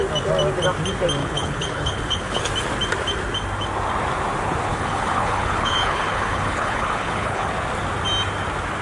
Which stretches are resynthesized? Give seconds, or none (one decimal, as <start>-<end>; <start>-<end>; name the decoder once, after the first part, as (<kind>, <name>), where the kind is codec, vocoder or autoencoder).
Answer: 1.2-2.4 (codec, HILCodec); 4.7-7.5